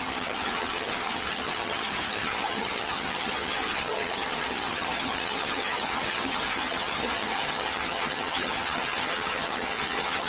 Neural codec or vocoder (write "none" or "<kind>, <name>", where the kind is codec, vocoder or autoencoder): vocoder, HiFi-GAN